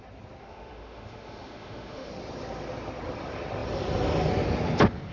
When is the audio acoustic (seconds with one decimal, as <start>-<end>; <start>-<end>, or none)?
0.0-0.4; 2.1-5.1